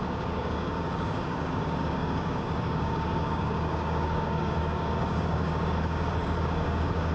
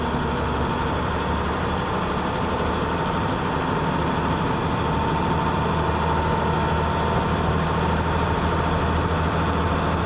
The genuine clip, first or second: second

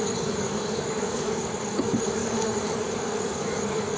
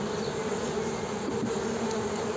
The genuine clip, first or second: second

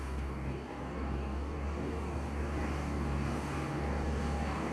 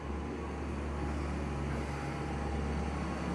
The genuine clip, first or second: second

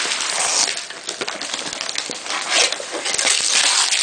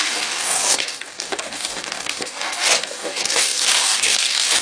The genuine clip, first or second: first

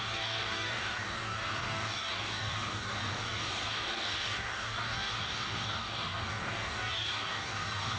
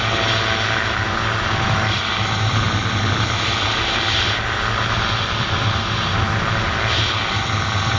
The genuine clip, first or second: second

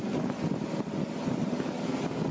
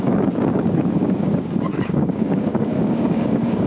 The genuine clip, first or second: first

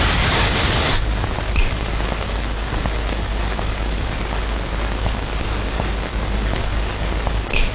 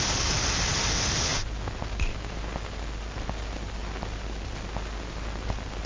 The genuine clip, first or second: second